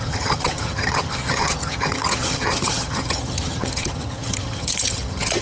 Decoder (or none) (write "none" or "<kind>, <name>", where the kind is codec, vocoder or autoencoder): vocoder, HiFi-GAN